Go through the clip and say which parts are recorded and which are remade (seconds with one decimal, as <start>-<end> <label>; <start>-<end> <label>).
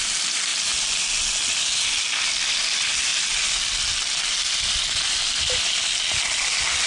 0.0-0.5 remade; 0.5-1.6 recorded; 1.6-3.1 remade; 3.1-5.4 recorded; 5.4-6.9 remade